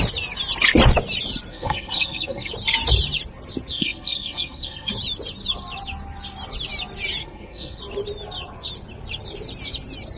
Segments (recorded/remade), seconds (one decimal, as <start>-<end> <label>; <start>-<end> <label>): 0.0-1.5 recorded; 1.5-2.5 remade; 2.5-3.7 recorded; 3.7-4.9 remade; 4.9-7.2 recorded; 7.2-7.8 remade; 7.8-10.2 recorded